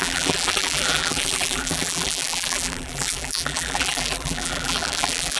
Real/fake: fake